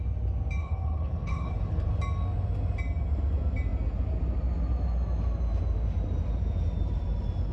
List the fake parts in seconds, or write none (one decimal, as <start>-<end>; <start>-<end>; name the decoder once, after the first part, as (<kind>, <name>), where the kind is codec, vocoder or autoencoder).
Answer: 0.6-1.9 (codec, HILCodec)